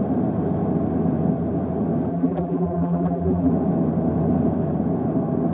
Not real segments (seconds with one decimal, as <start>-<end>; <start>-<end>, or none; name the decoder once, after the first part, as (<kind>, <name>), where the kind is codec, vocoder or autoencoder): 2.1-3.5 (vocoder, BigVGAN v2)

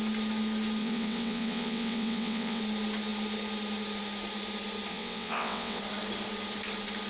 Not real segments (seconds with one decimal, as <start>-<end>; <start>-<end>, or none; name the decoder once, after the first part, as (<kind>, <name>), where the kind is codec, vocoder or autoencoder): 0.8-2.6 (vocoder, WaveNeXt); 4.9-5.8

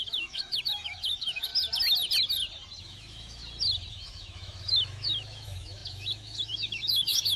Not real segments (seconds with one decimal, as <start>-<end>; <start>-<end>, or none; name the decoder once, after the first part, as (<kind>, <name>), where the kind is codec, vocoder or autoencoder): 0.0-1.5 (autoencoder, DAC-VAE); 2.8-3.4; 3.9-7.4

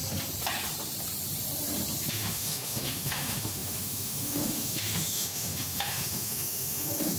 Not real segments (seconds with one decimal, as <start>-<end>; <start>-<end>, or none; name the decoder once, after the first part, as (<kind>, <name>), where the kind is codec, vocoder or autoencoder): 2.1-7.2 (autoencoder, DAC-VAE)

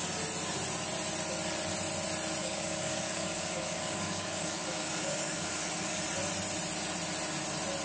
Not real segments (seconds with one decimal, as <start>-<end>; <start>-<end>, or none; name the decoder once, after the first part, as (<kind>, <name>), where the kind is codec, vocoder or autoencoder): 2.4-6.0 (codec, DAC)

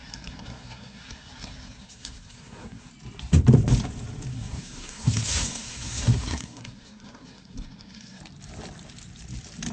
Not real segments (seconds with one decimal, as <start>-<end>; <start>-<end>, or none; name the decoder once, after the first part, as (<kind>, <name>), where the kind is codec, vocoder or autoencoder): 0.0-2.9 (codec, SNAC); 4.3-8.2

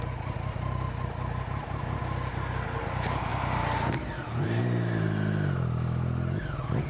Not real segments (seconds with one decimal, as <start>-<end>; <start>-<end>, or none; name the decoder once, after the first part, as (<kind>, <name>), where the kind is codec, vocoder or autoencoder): 3.3-4.6 (vocoder, BigVGAN v2)